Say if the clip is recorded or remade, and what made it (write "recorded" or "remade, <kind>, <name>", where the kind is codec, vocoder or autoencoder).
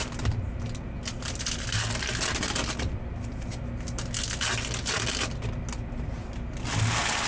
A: recorded